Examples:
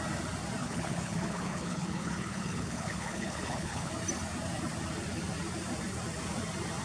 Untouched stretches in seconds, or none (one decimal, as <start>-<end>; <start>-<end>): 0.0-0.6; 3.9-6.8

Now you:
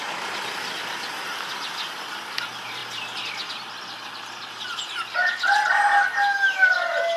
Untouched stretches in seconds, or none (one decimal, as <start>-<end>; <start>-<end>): 0.0-7.2

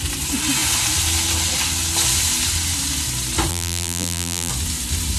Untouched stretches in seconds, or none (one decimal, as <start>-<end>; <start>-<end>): 0.0-3.5; 4.5-5.2